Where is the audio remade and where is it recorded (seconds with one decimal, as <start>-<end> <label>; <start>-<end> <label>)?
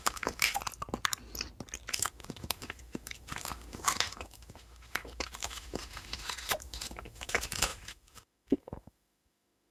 0.0-0.6 remade; 0.6-1.9 recorded; 1.9-9.7 remade